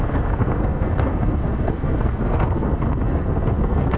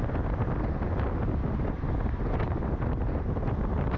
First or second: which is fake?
first